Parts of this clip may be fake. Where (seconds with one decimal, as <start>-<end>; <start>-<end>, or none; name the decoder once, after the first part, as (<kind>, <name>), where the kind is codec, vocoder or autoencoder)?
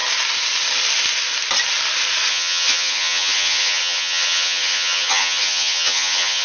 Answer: 2.3-6.4 (vocoder, HiFi-GAN)